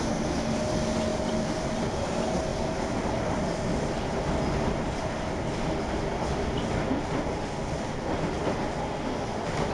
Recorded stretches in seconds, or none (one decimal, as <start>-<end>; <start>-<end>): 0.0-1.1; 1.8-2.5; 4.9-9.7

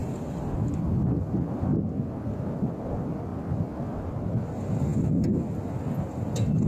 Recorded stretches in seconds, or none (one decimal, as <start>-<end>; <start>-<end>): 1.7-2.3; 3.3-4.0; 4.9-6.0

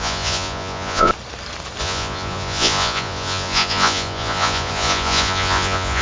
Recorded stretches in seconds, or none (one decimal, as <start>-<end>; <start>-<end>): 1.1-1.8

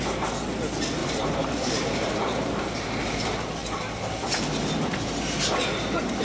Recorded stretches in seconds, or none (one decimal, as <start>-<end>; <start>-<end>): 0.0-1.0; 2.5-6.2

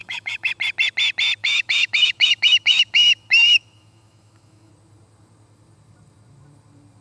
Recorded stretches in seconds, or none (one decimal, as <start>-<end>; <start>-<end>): 0.5-1.4; 4.7-7.0

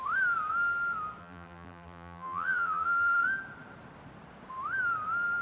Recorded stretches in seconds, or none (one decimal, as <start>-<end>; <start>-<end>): 0.0-1.2; 3.2-5.4

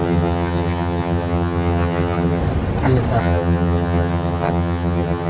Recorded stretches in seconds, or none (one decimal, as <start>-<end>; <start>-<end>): 2.4-3.2

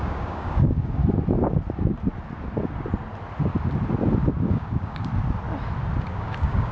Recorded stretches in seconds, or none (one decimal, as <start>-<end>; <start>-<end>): 1.0-4.5; 5.1-6.0